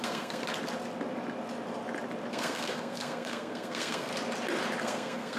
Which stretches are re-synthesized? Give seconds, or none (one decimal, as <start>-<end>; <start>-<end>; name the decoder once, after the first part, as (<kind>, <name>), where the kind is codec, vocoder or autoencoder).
0.0-0.4 (codec, SNAC); 2.3-4.1; 4.8-5.4